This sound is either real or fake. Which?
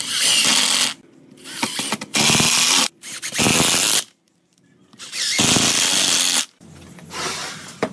real